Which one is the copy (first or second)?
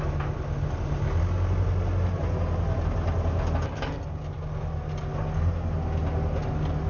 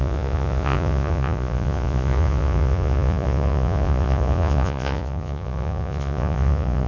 second